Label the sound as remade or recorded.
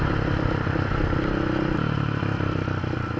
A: recorded